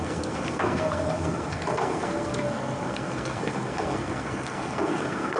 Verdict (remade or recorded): remade